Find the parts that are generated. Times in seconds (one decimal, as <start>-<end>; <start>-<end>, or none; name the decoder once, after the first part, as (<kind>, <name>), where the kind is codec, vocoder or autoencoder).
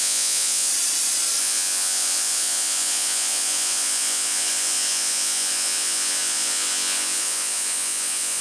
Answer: 0.0-0.7 (vocoder, Vocos); 1.4-8.4